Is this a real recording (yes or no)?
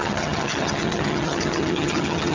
no